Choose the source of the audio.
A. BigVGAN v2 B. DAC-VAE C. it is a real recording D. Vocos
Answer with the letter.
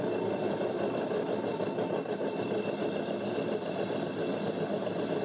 C